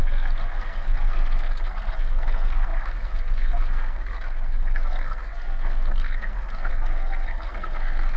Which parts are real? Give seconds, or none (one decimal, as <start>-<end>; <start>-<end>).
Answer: none